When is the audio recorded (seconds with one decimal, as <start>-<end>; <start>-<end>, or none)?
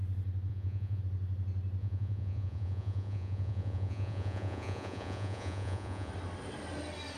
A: 0.0-0.5; 1.0-1.8; 6.1-7.2